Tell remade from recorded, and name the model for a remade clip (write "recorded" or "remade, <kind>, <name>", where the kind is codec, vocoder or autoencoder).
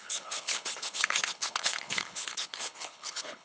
remade, codec, HILCodec